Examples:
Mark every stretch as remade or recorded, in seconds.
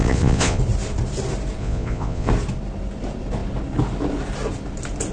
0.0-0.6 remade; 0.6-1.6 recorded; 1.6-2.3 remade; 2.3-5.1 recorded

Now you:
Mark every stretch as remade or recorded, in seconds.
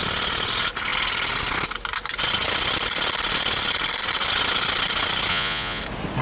0.0-5.3 recorded; 5.3-5.8 remade; 5.8-6.2 recorded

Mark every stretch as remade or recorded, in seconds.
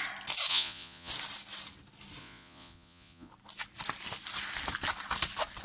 0.0-0.5 recorded; 0.5-1.1 remade; 1.1-2.2 recorded; 2.2-3.3 remade; 3.3-5.6 recorded